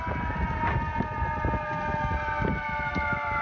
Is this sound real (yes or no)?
yes